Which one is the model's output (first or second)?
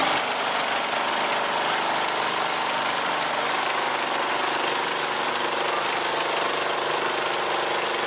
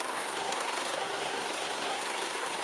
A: second